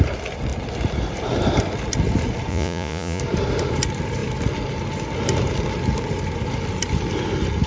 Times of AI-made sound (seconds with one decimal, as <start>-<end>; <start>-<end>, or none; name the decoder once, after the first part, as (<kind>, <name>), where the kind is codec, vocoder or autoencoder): 2.5-3.2 (vocoder, Vocos)